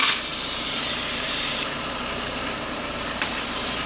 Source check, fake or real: fake